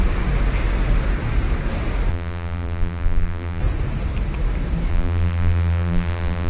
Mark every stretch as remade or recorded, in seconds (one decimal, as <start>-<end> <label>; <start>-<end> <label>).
0.0-2.1 recorded; 2.1-3.6 remade; 3.6-4.9 recorded; 4.9-6.5 remade

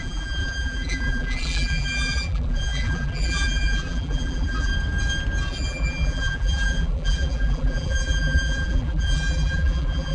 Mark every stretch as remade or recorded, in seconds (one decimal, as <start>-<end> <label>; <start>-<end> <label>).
0.0-4.7 remade; 4.7-5.5 recorded; 5.5-10.1 remade

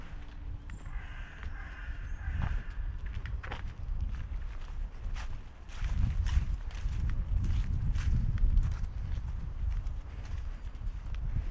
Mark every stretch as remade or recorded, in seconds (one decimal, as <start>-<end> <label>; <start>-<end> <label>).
0.0-5.7 recorded; 5.7-7.4 remade; 7.4-11.5 recorded

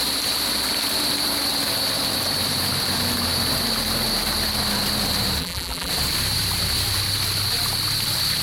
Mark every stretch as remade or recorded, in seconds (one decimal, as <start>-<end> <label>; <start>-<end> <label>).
0.0-5.4 recorded; 5.4-5.9 remade; 5.9-8.4 recorded